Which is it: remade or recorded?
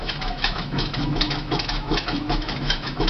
remade